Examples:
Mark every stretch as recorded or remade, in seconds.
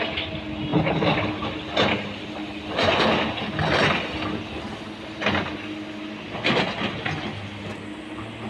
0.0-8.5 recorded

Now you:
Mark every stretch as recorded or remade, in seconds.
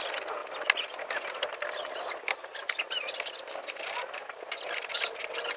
0.0-5.6 recorded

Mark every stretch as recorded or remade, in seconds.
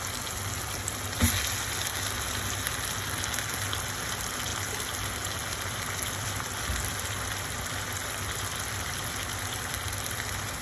0.0-10.6 recorded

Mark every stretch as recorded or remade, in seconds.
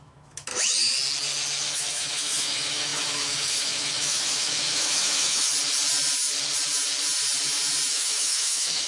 0.0-0.5 remade; 0.5-1.7 recorded; 1.7-5.5 remade; 5.5-7.9 recorded; 7.9-8.9 remade